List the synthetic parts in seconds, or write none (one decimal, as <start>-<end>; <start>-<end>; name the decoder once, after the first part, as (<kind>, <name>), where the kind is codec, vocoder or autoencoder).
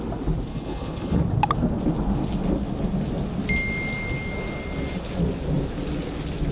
0.5-1.2 (codec, HILCodec)